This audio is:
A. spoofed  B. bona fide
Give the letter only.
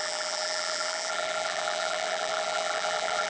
A